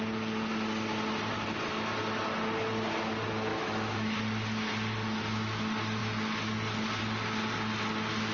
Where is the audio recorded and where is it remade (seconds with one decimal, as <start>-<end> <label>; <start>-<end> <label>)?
0.0-3.5 recorded; 3.5-4.2 remade; 4.2-8.3 recorded